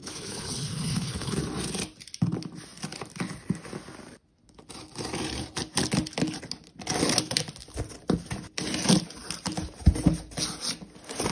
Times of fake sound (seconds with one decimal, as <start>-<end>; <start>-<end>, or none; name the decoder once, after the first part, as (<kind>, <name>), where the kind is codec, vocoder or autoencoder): 0.0-1.4 (codec, HILCodec)